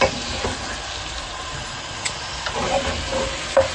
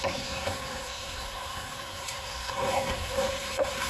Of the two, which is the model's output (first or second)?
second